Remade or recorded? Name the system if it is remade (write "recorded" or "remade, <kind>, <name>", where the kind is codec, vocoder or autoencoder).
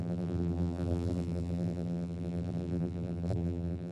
remade, vocoder, BigVGAN v2